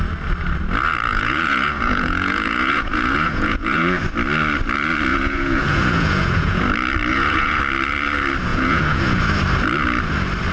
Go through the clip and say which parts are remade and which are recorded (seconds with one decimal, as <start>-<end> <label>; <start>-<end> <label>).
0.0-1.1 recorded; 1.1-4.0 remade; 4.0-5.1 recorded; 5.1-6.6 remade; 6.6-7.1 recorded; 7.1-7.6 remade; 7.6-8.5 recorded; 8.5-9.2 remade; 9.2-10.5 recorded